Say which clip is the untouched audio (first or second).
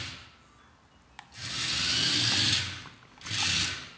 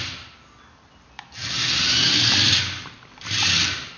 first